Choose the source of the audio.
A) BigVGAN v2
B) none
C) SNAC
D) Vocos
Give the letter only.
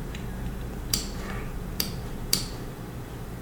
A